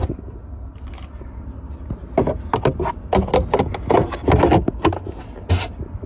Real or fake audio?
real